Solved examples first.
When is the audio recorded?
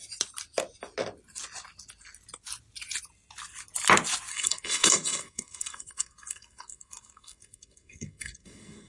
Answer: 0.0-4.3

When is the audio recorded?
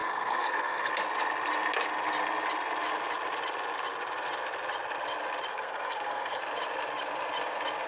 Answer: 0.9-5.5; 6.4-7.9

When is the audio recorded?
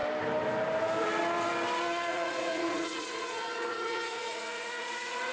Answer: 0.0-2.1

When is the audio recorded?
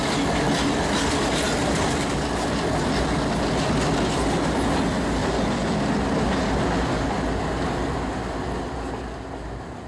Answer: 0.0-9.9